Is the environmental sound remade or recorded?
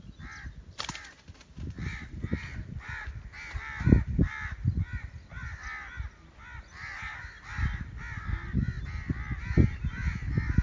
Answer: recorded